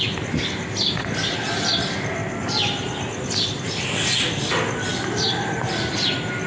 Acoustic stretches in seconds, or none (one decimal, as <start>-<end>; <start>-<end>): 0.0-6.5